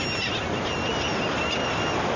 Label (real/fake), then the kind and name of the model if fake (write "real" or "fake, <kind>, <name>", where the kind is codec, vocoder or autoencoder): real